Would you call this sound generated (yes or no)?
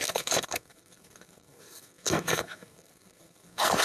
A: yes